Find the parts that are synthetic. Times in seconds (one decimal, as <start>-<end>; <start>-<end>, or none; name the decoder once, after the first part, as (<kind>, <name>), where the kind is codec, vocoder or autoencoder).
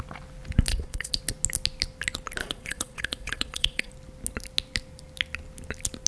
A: 0.7-1.2 (vocoder, Vocos); 2.4-3.9